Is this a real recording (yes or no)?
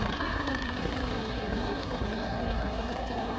no